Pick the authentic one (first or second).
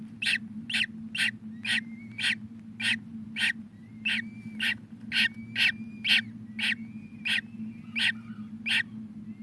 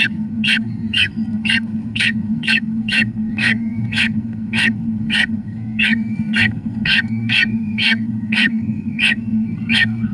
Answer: first